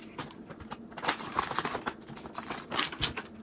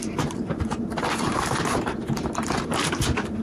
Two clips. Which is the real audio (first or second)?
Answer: first